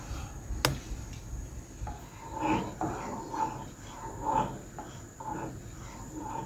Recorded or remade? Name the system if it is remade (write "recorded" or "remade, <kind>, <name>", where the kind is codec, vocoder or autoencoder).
recorded